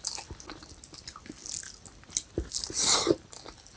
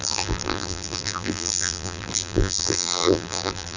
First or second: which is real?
first